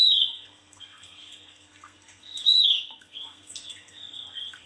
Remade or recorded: remade